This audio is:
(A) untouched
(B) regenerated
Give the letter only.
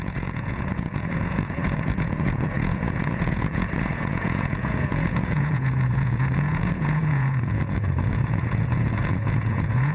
B